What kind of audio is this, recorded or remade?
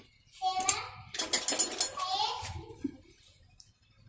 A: recorded